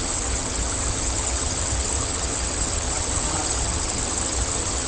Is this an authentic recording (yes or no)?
no